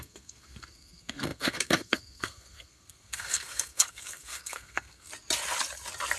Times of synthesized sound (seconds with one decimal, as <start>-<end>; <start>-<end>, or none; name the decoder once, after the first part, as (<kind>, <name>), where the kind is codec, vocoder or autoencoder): 0.0-5.1 (codec, SNAC)